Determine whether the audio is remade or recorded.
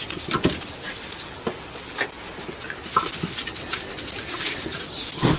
recorded